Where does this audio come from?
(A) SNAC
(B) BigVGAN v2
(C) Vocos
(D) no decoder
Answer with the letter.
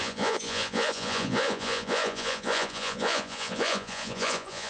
C